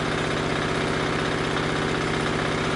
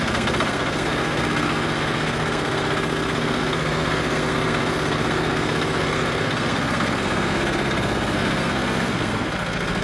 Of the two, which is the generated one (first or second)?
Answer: second